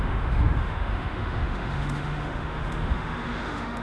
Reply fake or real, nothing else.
fake